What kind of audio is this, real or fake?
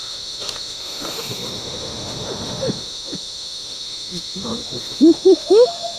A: fake